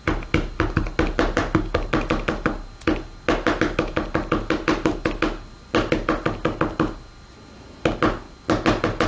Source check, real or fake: real